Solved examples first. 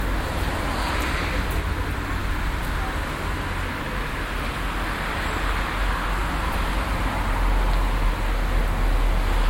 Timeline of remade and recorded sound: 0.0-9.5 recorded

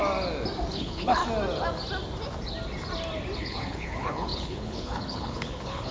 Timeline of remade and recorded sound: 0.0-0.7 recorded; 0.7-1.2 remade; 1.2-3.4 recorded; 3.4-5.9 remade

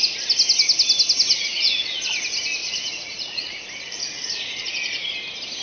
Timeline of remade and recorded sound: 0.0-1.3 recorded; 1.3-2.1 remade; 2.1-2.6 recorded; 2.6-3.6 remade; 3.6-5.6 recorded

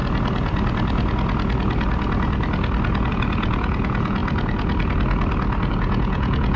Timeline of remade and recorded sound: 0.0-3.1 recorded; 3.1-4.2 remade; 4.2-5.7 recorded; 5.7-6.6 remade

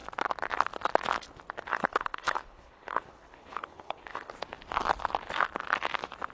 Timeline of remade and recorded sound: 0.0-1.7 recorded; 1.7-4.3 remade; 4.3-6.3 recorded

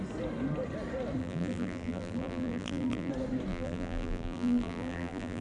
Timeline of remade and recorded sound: 0.0-1.2 recorded; 1.2-3.1 remade; 3.1-3.5 recorded; 3.5-5.4 remade